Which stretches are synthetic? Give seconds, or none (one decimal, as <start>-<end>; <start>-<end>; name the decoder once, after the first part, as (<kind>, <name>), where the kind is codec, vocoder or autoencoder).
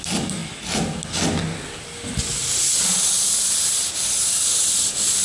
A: none